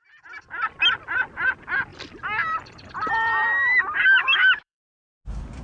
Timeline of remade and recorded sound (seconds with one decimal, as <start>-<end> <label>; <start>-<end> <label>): 0.0-4.2 recorded; 4.2-4.9 remade; 4.9-5.6 recorded